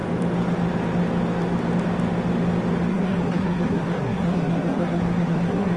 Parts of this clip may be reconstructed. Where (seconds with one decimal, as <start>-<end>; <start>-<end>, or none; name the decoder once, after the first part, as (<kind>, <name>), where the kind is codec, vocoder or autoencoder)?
2.9-5.8 (codec, SNAC)